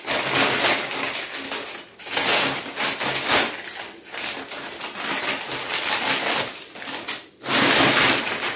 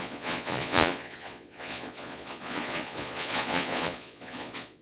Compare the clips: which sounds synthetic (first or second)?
second